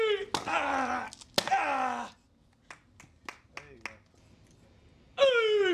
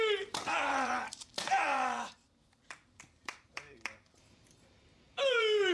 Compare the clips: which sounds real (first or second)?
first